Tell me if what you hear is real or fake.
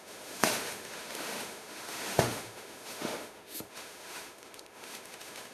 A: fake